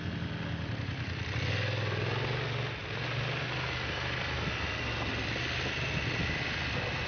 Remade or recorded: recorded